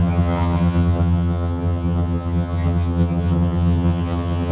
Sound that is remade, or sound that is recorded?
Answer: remade